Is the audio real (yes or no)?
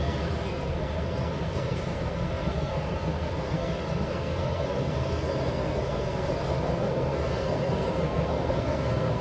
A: no